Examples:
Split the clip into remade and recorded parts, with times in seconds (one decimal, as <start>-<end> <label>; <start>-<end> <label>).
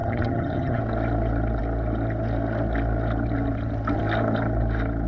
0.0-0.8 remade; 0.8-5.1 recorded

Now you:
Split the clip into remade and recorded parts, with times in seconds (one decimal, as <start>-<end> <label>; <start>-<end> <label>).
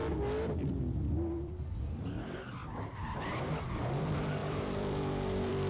0.0-0.8 recorded; 0.8-2.6 remade; 2.6-3.4 recorded; 3.4-5.7 remade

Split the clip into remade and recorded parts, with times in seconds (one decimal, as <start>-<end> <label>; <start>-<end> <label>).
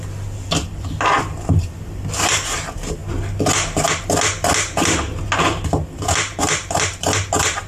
0.0-7.7 recorded